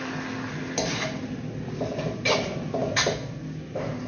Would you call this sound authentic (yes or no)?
yes